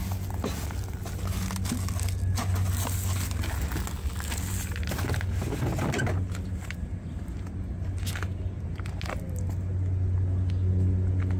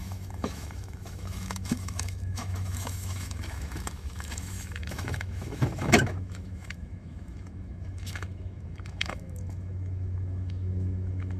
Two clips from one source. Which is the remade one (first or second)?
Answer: second